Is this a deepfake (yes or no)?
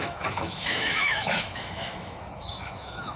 yes